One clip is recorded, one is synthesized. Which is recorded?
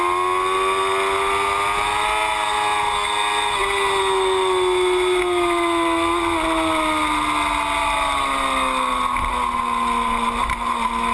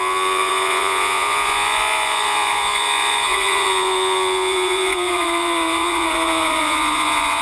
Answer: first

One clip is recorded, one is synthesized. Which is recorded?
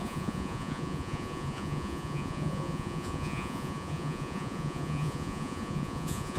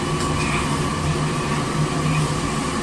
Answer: second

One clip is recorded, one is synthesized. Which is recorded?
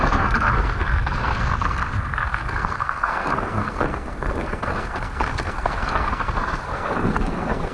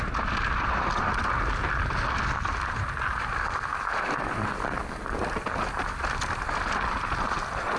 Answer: second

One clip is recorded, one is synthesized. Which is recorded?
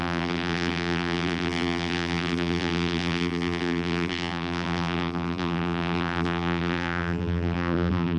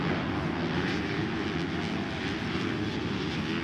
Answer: second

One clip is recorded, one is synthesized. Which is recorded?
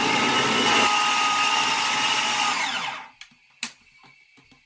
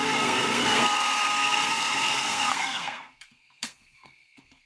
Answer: first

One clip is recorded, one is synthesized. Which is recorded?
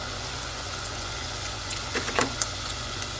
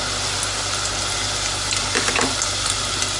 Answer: second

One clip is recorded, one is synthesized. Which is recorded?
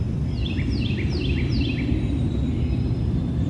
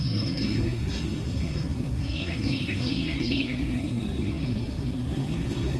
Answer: first